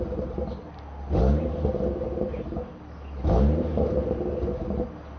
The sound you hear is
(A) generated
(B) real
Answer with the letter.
B